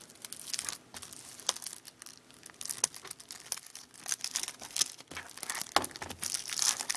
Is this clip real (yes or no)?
yes